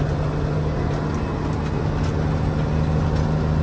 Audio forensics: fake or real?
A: real